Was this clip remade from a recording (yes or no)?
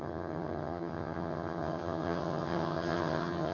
yes